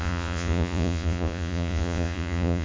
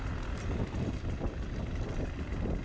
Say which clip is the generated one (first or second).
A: first